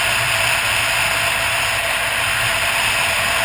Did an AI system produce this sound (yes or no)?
no